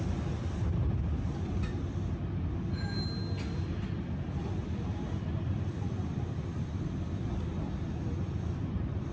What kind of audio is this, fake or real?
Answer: real